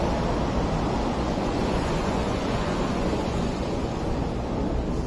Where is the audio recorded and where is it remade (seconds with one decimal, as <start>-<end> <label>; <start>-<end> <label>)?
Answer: 0.0-1.1 recorded; 1.1-4.2 remade; 4.2-5.1 recorded